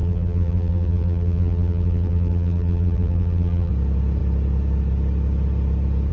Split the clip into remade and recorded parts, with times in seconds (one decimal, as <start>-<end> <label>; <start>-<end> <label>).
0.0-3.7 remade; 3.7-6.1 recorded